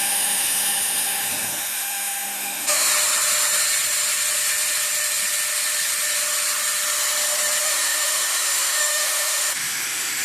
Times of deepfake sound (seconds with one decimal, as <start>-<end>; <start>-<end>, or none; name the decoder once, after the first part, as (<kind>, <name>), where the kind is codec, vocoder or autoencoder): 0.0-2.9 (autoencoder, DAC-VAE); 7.6-10.2